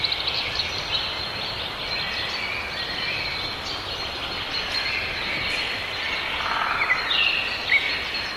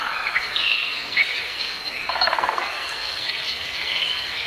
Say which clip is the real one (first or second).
first